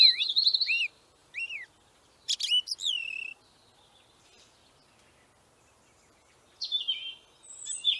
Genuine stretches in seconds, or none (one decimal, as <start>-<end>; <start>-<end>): 0.0-8.0

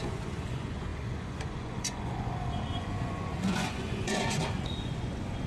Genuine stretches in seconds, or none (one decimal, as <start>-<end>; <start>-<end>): none

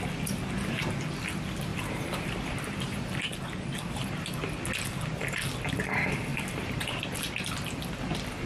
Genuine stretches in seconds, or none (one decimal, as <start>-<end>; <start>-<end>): 0.0-1.7; 4.3-6.3; 7.0-8.5

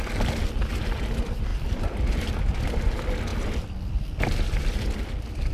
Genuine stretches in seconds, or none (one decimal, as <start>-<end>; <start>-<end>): 0.0-1.5; 2.4-3.3; 5.1-5.5

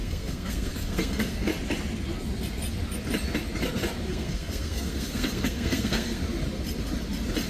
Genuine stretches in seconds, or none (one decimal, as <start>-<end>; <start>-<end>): 1.5-4.1; 6.2-7.5

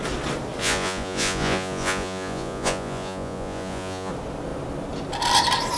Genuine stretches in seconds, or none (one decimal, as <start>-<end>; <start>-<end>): 0.0-0.6; 4.1-5.8

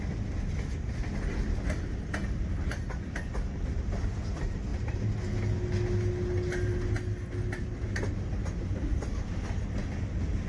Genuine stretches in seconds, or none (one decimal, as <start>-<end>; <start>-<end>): 0.0-10.5